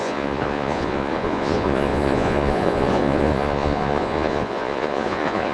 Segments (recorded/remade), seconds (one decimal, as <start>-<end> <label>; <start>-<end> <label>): 0.0-5.5 remade